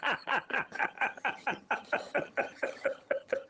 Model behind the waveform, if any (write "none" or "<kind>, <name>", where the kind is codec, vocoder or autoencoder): vocoder, HiFi-GAN